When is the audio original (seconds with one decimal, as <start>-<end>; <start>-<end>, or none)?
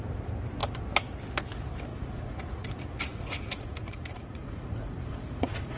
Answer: 0.0-1.9; 2.7-3.1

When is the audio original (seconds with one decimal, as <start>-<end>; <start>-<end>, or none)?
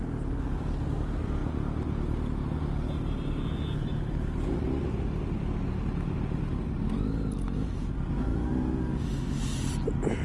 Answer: 0.0-10.2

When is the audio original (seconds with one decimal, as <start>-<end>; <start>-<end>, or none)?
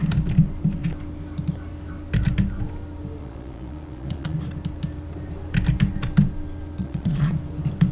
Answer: 0.0-3.2; 4.4-6.8; 7.3-7.9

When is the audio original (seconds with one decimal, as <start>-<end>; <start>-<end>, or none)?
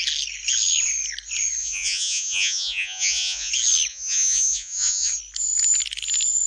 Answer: 0.0-1.6; 3.5-3.9; 5.1-6.5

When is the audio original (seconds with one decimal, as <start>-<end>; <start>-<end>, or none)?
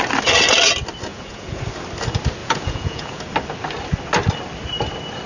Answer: 0.0-1.1; 1.6-2.4; 3.2-5.3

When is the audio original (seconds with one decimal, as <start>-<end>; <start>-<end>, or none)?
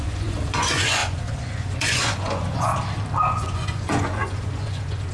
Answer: 2.7-3.3